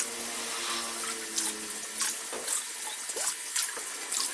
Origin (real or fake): real